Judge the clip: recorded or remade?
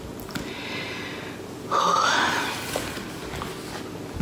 recorded